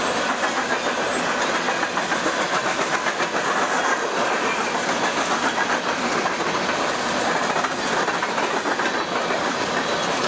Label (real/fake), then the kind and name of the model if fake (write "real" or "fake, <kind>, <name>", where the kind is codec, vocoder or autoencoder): real